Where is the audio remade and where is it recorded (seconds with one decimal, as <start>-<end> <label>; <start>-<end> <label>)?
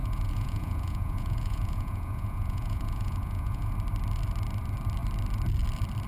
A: 0.0-3.7 remade; 3.7-6.1 recorded